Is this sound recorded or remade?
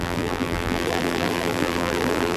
remade